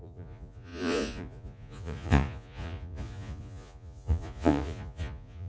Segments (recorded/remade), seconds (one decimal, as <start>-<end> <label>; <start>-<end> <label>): 0.0-5.5 remade